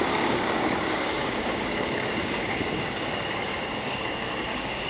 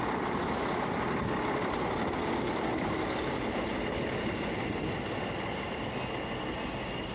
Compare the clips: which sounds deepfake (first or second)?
first